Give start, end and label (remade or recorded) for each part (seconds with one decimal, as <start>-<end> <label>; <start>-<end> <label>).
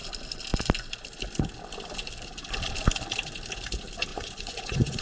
0.0-4.1 recorded; 4.1-5.0 remade